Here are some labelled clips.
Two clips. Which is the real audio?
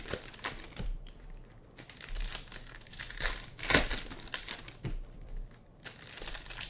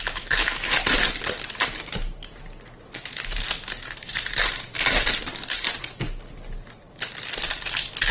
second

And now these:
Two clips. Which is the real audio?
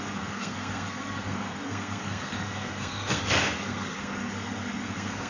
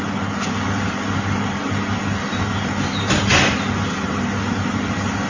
second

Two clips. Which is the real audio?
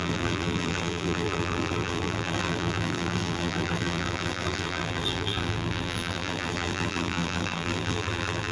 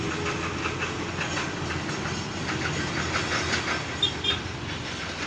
second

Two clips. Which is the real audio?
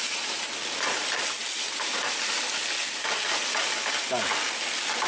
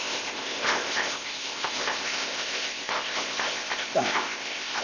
first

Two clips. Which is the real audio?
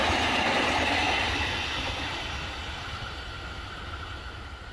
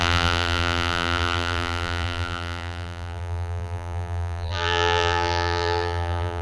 first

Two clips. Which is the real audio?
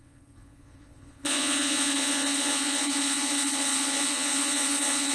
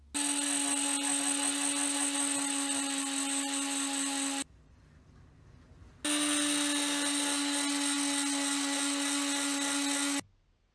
second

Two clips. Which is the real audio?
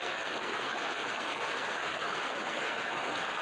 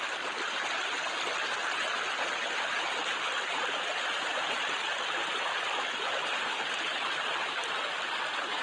second